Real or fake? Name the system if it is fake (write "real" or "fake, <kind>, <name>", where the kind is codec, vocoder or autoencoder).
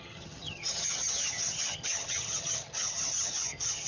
fake, vocoder, HiFi-GAN